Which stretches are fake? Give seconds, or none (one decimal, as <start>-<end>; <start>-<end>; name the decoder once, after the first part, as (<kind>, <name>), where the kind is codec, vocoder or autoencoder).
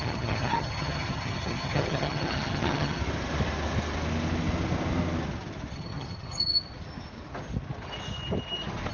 0.0-3.0 (vocoder, HiFi-GAN); 5.7-6.5